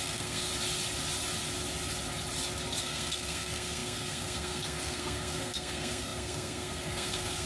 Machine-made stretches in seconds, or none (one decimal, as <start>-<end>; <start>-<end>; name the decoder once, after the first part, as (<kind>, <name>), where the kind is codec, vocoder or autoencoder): 0.0-0.5 (codec, SNAC); 2.8-7.5